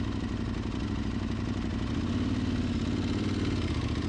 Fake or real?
real